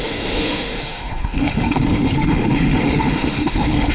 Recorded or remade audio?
remade